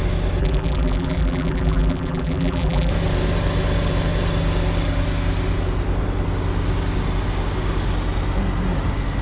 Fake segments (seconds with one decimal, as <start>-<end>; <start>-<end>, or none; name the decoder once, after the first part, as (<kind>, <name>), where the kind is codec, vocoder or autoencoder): 0.4-2.9 (vocoder, BigVGAN v2)